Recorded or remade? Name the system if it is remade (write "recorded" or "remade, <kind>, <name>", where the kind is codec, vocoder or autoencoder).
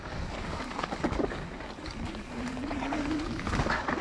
remade, codec, DAC